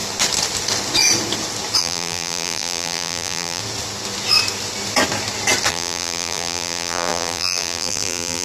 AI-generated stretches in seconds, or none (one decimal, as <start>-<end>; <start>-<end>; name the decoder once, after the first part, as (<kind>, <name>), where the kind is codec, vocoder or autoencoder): 1.8-3.6 (vocoder, BigVGAN v2); 5.7-8.4